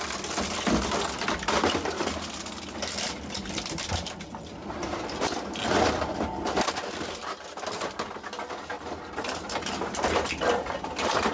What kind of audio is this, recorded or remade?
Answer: recorded